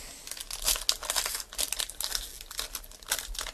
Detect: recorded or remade recorded